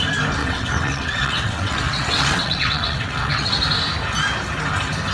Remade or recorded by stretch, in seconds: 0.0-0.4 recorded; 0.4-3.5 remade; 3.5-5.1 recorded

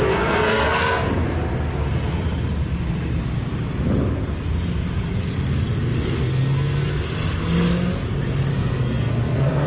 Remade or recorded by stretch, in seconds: 0.0-1.1 remade; 1.1-6.2 recorded; 6.2-6.9 remade; 6.9-8.5 recorded; 8.5-9.7 remade

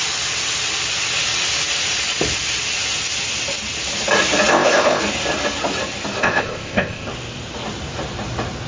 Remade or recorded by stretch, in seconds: 0.0-4.5 recorded; 4.5-5.0 remade; 5.0-6.2 recorded; 6.2-7.1 remade; 7.1-8.7 recorded